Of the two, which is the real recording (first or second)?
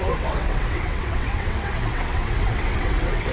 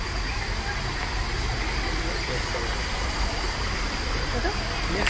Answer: second